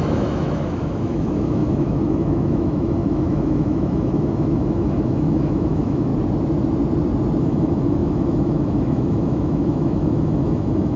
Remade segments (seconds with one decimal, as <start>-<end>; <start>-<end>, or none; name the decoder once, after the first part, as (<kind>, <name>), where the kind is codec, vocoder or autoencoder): 0.0-6.1 (autoencoder, DAC-VAE); 7.4-11.0